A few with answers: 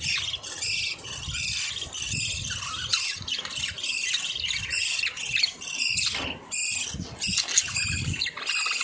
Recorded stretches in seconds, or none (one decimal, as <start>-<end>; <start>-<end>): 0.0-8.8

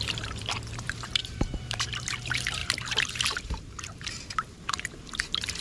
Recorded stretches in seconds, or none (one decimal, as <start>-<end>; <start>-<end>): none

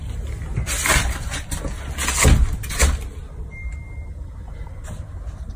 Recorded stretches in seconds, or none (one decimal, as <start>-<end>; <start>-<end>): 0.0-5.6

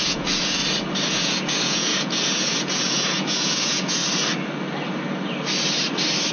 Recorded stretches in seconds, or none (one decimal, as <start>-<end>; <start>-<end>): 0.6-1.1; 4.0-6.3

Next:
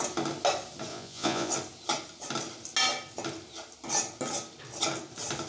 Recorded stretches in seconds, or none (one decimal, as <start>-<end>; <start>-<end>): 0.0-0.9; 1.5-5.5